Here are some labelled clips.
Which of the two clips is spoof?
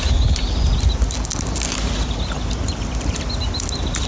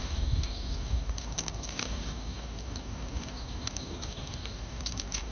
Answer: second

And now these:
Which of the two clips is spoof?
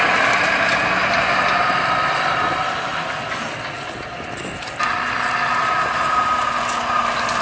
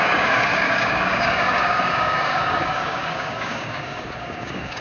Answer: second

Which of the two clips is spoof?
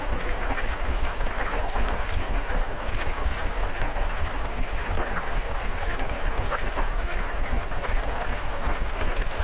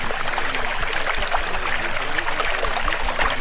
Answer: first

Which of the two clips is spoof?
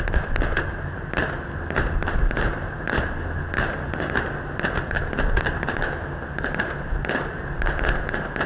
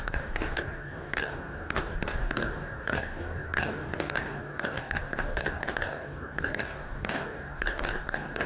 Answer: second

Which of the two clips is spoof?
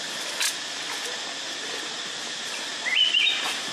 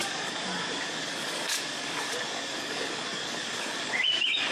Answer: second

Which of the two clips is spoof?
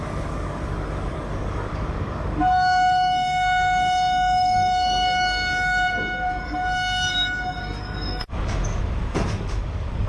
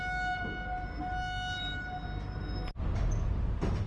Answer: first